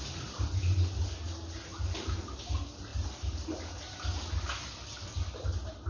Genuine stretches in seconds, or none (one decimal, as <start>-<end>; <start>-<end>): 0.0-5.9